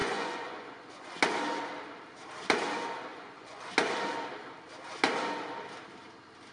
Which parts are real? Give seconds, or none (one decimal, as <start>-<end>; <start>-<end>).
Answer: 1.2-3.1; 3.7-6.5